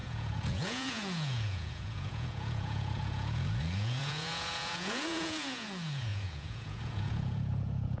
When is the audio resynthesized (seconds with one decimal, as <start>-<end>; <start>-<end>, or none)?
0.0-8.0

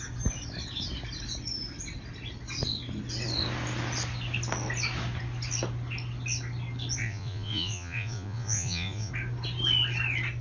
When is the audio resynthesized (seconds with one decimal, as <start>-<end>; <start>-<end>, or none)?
7.0-9.1

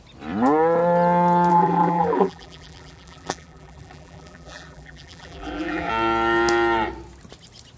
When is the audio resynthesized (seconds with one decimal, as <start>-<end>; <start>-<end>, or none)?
1.5-5.9

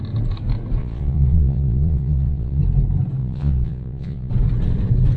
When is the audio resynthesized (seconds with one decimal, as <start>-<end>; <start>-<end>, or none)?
0.8-2.6; 3.2-4.3

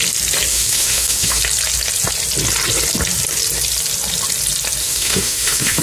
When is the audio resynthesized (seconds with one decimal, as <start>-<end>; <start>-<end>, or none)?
0.5-1.4; 4.8-5.8

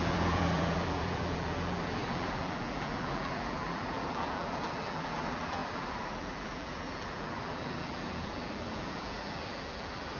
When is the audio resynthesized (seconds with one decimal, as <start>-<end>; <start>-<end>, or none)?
0.0-10.2